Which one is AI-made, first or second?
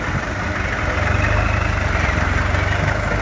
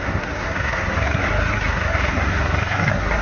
second